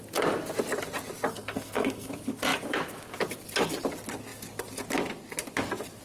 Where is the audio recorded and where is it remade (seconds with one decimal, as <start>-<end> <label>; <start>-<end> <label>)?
0.0-1.3 recorded; 1.3-2.1 remade; 2.1-6.0 recorded